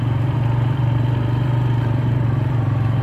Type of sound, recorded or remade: remade